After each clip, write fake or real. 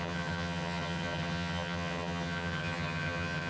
fake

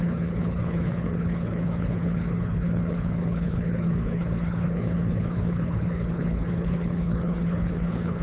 fake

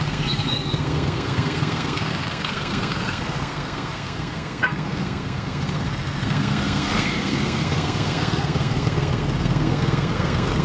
fake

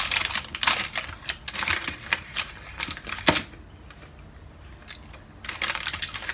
real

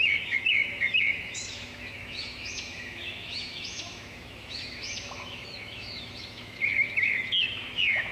fake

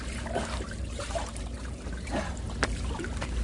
fake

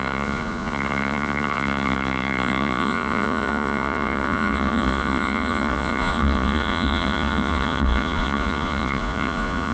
fake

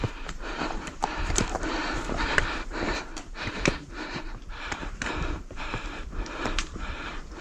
fake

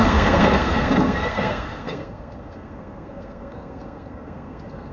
fake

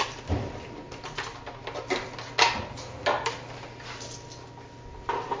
real